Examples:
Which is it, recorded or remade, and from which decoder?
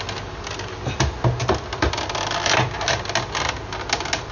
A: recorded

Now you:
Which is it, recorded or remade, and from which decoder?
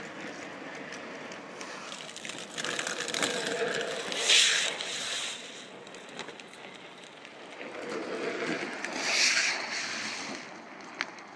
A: recorded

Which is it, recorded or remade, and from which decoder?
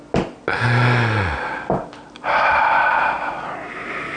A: recorded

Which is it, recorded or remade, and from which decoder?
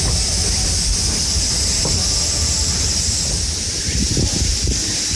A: recorded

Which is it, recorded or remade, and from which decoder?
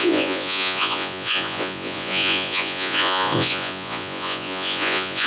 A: remade, vocoder, Vocos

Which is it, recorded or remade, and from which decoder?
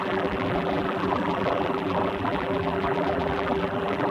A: remade, vocoder, BigVGAN v2